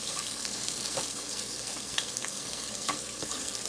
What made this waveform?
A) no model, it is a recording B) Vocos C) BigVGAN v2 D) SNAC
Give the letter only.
D